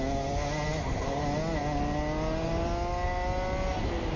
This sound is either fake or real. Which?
real